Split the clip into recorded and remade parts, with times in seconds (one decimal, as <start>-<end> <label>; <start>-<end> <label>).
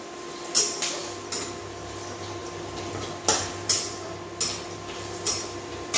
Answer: 0.0-6.0 recorded